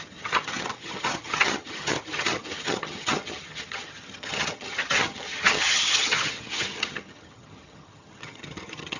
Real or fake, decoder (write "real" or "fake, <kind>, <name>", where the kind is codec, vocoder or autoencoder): fake, vocoder, HiFi-GAN